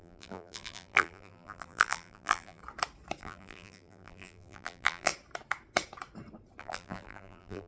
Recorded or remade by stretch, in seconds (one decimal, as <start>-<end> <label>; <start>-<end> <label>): 0.0-2.6 remade; 2.6-3.2 recorded; 3.2-5.1 remade; 5.1-6.6 recorded; 6.6-7.7 remade

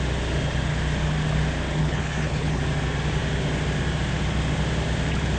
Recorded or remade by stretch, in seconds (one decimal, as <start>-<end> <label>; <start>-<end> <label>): 0.0-1.8 recorded; 1.8-2.6 remade; 2.6-5.4 recorded